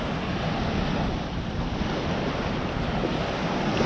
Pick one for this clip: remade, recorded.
recorded